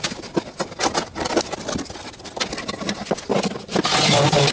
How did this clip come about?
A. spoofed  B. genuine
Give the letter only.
B